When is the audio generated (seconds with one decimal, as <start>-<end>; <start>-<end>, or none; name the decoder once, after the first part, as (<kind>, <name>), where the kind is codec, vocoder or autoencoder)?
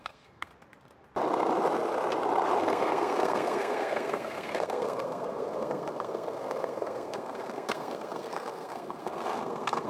0.0-0.5 (codec, SNAC); 2.6-9.9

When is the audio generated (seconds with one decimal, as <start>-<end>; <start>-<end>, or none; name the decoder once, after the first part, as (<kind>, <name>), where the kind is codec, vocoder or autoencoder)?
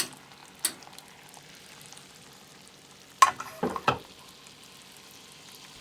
none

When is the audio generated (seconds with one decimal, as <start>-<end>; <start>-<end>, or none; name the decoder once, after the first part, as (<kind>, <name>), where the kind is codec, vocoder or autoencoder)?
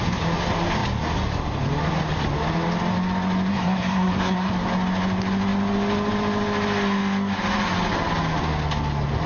3.5-4.5 (codec, SNAC)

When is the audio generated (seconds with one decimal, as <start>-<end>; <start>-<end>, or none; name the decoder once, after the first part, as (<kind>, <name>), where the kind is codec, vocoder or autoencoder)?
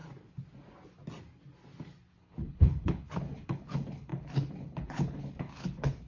2.2-6.1 (codec, HILCodec)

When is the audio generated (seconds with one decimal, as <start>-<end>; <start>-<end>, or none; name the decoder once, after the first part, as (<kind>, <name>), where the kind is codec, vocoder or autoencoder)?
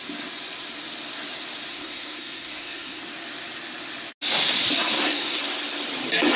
1.7-3.0 (codec, SNAC); 4.9-5.4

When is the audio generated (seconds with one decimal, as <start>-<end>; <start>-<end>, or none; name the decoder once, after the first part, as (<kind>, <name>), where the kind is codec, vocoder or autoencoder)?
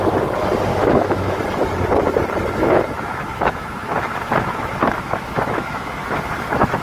0.7-1.4 (autoencoder, DAC-VAE); 2.6-6.8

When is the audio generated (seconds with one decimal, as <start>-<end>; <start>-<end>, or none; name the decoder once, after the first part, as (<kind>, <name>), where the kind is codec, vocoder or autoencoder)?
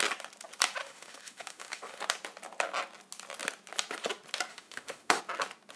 0.8-2.0 (autoencoder, DAC-VAE); 4.5-5.2